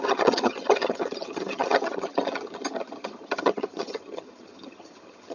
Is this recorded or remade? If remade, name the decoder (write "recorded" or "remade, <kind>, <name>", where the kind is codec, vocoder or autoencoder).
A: remade, vocoder, HiFi-GAN